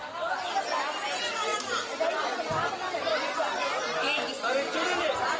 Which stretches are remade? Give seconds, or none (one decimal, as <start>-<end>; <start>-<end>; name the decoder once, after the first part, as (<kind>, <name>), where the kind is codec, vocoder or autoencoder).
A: none